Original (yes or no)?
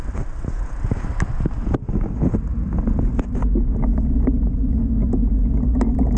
yes